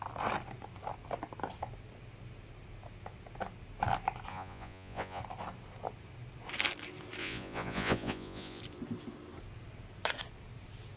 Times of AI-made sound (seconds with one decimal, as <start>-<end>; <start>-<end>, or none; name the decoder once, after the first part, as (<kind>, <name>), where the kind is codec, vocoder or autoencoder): 4.3-5.2 (vocoder, Vocos); 7.2-8.6

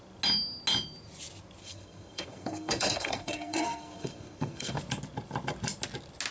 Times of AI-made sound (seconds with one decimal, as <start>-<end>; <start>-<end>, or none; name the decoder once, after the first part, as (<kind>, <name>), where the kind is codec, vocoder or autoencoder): 1.6-4.8 (codec, SNAC)

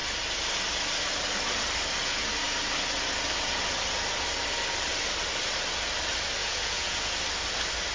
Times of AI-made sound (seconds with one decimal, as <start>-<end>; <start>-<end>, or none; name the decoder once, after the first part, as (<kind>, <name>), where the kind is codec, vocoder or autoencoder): 6.4-7.2 (vocoder, Vocos)

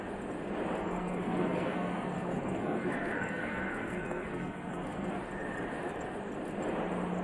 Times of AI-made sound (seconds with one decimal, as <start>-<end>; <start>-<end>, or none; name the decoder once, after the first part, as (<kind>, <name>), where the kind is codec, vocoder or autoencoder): 0.8-5.1 (codec, SNAC)

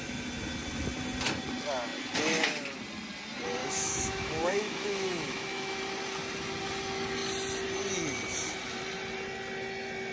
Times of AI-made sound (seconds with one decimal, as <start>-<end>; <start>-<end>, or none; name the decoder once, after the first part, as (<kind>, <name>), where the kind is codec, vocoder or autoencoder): 3.6-5.8 (autoencoder, DAC-VAE)

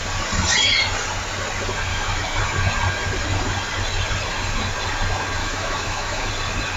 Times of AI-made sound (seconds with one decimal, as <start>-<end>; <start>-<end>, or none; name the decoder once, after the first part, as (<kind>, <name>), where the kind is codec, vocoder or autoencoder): 1.9-2.4 (autoencoder, DAC-VAE); 5.4-6.3

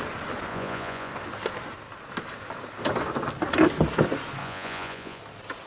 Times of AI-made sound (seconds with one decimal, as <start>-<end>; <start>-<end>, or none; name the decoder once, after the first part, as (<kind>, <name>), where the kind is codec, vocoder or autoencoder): 0.5-1.1 (vocoder, Vocos); 4.4-5.2